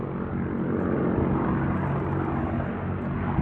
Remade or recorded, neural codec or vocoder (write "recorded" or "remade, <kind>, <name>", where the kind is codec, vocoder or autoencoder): recorded